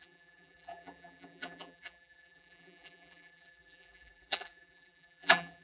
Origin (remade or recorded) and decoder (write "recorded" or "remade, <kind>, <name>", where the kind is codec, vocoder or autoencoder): remade, vocoder, BigVGAN v2